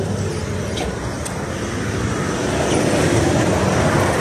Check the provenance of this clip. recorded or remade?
recorded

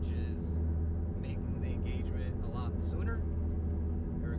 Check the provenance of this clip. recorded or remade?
recorded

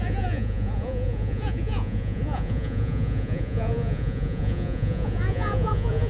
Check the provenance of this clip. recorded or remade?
remade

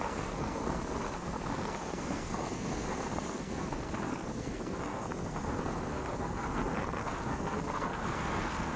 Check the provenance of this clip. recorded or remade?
remade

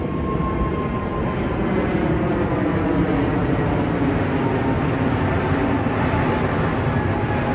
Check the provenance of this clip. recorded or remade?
recorded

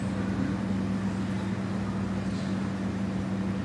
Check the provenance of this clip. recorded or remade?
recorded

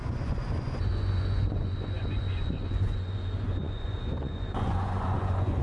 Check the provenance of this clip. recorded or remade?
remade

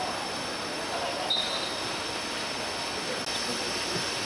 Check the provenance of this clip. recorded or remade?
recorded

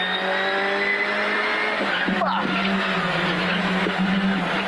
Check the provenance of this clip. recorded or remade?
recorded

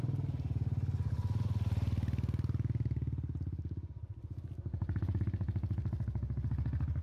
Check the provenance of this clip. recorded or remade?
recorded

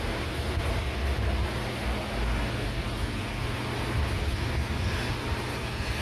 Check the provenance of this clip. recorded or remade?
recorded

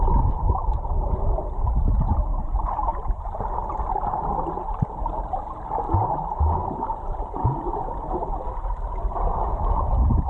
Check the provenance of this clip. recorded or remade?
recorded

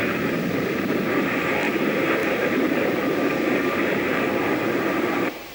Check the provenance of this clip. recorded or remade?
remade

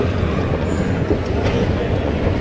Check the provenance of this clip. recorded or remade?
remade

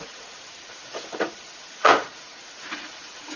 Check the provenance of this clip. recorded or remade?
remade